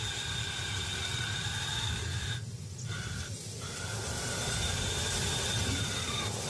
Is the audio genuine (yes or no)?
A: yes